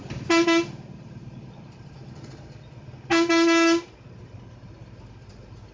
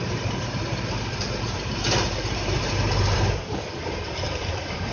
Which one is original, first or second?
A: first